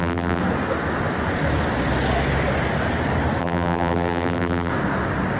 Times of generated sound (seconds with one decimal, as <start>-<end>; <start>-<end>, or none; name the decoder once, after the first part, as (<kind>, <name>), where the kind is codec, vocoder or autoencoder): 0.0-0.4 (vocoder, BigVGAN v2); 3.4-4.7